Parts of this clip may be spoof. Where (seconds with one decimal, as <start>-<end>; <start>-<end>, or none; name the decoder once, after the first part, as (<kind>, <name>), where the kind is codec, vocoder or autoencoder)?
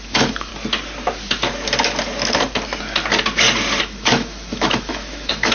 0.0-0.5 (autoencoder, DAC-VAE); 3.8-5.5